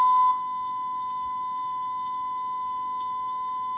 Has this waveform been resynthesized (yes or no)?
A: no